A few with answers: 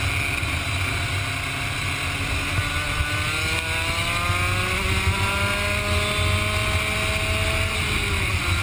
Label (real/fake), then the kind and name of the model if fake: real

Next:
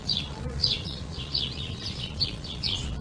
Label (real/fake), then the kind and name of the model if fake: fake, vocoder, Vocos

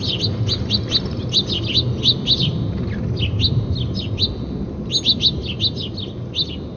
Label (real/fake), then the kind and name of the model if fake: real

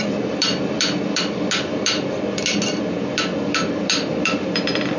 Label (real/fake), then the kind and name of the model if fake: fake, vocoder, BigVGAN v2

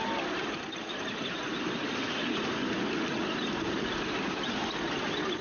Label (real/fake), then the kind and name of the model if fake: real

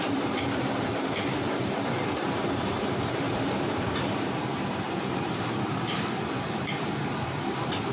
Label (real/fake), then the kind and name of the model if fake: fake, vocoder, BigVGAN v2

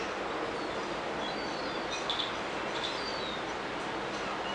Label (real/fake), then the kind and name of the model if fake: real